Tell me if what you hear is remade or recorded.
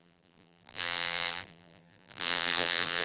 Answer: remade